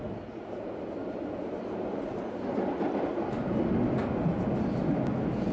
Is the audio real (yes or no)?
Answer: yes